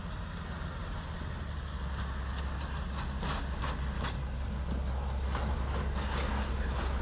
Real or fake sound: real